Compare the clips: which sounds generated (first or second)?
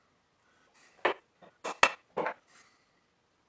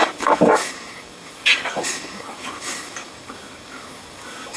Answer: second